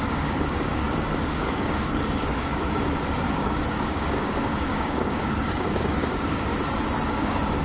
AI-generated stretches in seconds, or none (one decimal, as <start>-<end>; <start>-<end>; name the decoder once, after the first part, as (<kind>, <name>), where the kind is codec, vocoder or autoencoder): 0.0-6.5 (codec, DAC); 7.1-7.6